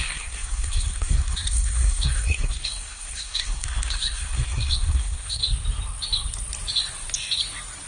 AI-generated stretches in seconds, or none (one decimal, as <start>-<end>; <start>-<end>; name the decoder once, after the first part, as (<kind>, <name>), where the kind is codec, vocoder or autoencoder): 0.0-5.4 (codec, SNAC)